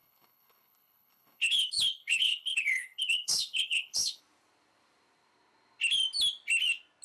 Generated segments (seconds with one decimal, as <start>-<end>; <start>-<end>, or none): 0.0-4.2